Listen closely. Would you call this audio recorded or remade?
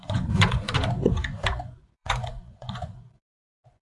remade